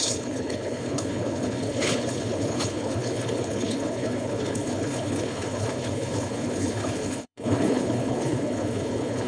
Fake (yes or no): yes